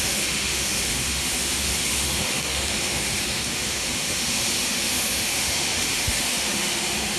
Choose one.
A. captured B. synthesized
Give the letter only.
B